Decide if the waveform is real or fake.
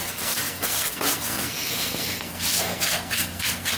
fake